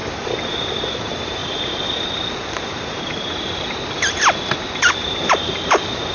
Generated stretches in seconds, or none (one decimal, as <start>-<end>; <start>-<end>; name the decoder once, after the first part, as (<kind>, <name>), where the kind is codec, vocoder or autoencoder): 0.0-6.1 (vocoder, BigVGAN v2)